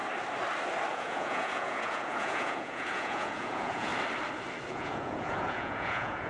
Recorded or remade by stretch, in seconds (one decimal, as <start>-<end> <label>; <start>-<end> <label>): 0.0-0.9 recorded; 0.9-3.9 remade; 3.9-4.7 recorded; 4.7-6.3 remade